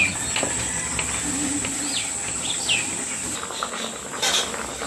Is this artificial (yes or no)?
no